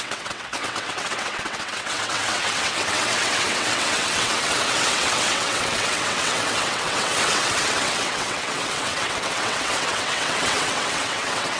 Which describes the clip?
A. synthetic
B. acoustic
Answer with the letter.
A